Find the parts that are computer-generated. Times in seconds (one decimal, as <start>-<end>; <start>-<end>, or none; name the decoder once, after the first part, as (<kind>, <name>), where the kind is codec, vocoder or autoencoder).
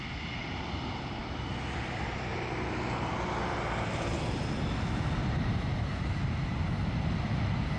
none